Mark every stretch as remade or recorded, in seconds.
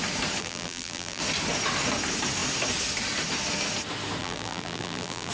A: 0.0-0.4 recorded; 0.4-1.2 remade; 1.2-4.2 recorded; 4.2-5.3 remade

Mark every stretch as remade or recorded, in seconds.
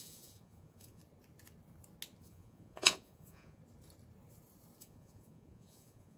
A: 0.0-1.0 remade; 1.0-2.2 recorded; 2.2-3.6 remade; 3.6-4.8 recorded; 4.8-6.2 remade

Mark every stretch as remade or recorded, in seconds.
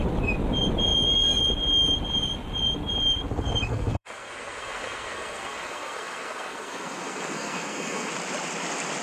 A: 0.0-3.7 recorded; 3.7-8.1 remade; 8.1-9.0 recorded